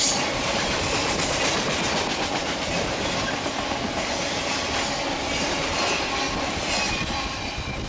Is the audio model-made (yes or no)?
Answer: no